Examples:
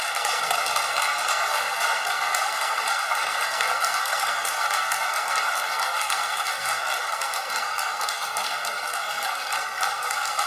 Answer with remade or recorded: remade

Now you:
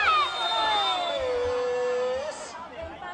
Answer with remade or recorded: recorded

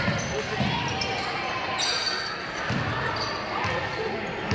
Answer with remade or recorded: recorded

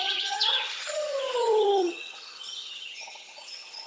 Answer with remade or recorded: remade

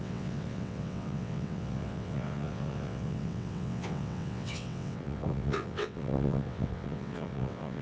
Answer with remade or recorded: remade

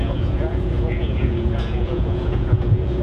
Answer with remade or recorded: remade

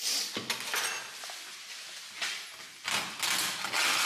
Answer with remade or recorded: recorded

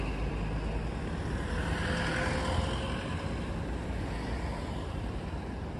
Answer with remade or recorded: recorded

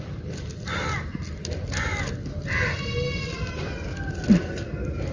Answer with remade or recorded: recorded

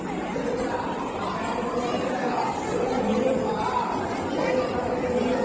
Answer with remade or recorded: remade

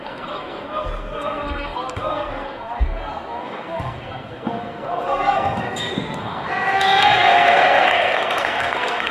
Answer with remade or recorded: remade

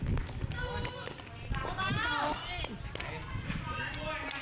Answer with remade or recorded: recorded